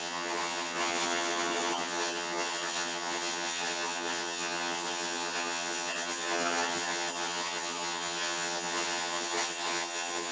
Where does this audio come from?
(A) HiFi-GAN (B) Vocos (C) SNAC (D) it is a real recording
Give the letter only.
A